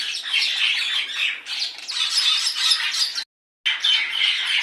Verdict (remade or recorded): recorded